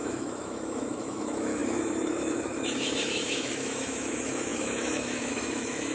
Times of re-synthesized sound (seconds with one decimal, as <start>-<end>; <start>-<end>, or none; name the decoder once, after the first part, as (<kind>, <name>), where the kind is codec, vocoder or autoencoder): 0.0-5.9 (autoencoder, DAC-VAE)